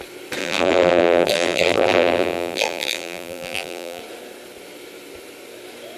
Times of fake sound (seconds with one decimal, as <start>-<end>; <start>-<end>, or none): 0.4-4.0